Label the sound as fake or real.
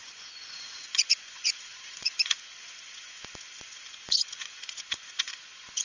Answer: fake